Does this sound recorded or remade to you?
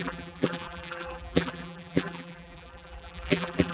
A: remade